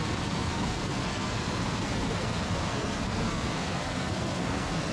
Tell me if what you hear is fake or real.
fake